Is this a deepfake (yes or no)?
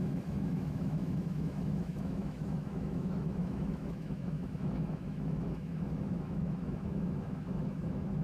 yes